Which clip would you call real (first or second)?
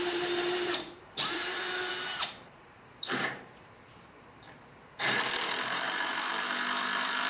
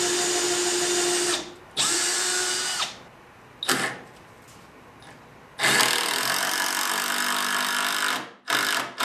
second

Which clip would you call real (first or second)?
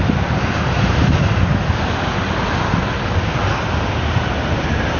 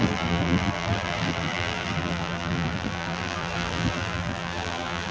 first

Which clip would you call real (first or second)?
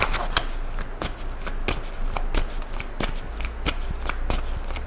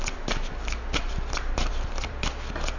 first